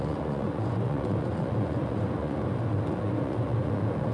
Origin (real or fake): fake